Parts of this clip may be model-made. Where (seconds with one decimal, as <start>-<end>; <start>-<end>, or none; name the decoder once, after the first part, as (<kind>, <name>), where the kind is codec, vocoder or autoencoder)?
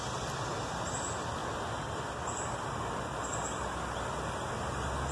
none